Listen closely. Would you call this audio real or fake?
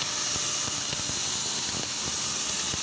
real